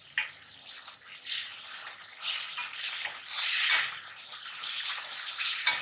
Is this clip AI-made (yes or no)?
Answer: no